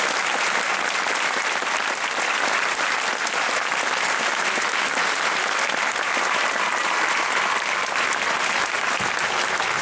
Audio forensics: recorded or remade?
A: recorded